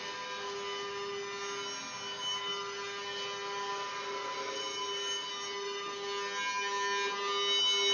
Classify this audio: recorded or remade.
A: recorded